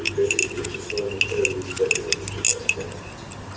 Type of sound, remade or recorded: recorded